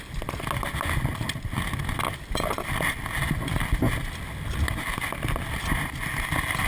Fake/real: real